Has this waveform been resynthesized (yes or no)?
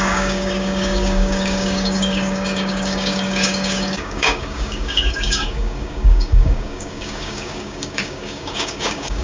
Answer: yes